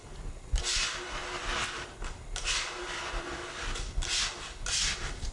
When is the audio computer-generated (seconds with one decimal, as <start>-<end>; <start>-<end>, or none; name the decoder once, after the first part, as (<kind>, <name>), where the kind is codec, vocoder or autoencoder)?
none